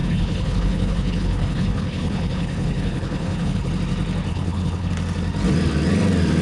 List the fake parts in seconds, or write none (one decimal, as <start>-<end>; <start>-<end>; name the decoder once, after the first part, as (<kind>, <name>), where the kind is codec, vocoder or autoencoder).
0.0-3.7 (codec, HILCodec); 4.3-4.9

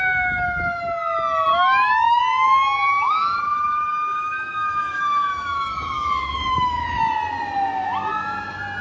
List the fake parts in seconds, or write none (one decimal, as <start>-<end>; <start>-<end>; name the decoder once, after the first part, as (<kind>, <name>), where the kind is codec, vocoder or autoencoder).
1.5-2.2 (autoencoder, DAC-VAE); 2.9-7.0

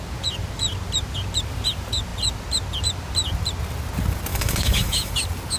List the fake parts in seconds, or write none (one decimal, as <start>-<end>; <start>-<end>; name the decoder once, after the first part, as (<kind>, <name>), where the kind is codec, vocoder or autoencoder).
4.3-5.1 (autoencoder, DAC-VAE)

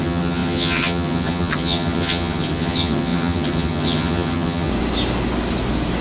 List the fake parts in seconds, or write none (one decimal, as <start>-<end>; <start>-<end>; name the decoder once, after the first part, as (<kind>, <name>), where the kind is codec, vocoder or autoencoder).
0.0-4.7 (vocoder, HiFi-GAN)